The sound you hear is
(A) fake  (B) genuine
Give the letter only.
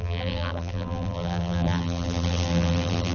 A